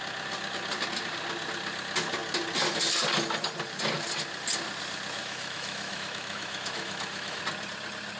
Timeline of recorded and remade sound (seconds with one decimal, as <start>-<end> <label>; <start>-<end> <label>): 0.0-5.2 recorded; 5.2-7.4 remade; 7.4-8.2 recorded